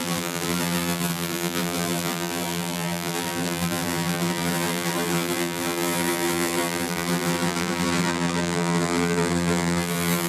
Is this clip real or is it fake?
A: fake